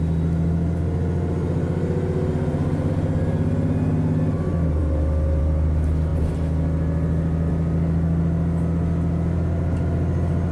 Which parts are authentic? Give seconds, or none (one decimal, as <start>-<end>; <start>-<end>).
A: 0.0-10.5